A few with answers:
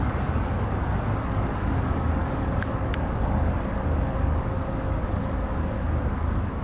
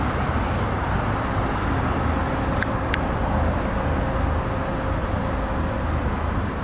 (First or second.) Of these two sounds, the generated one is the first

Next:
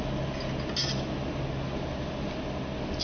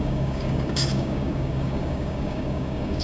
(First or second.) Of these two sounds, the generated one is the second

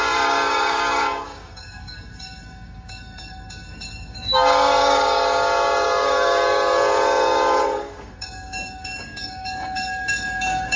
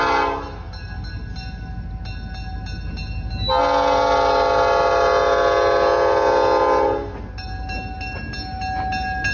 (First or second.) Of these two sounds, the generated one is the first